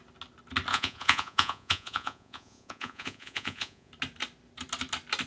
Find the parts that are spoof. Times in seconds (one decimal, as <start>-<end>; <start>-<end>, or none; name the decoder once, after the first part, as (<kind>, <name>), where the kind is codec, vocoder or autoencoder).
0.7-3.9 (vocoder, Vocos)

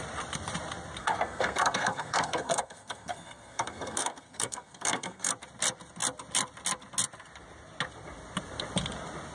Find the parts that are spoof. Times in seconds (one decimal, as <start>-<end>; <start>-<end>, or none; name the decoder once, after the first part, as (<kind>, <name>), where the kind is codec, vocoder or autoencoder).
1.0-5.3 (codec, SNAC)

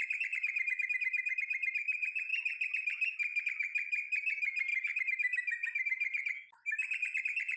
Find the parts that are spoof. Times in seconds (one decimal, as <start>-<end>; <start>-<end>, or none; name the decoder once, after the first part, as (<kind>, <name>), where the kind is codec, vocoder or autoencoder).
none

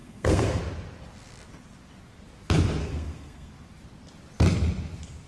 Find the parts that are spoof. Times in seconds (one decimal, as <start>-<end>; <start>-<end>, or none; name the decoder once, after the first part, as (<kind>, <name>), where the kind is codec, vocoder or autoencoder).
0.0-0.6 (codec, SNAC); 2.8-3.5

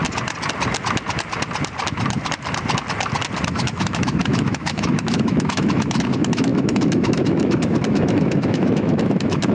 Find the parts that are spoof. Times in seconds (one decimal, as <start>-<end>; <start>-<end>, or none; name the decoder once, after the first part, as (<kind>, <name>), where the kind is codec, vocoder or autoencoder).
3.5-9.5 (autoencoder, DAC-VAE)